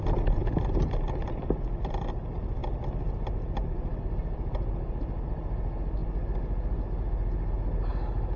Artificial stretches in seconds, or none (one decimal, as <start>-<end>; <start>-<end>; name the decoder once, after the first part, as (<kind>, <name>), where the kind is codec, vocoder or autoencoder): none